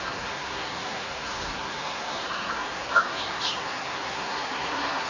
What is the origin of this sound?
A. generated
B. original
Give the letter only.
A